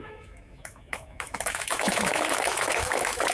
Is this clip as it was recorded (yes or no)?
no